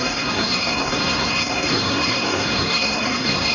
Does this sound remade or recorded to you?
remade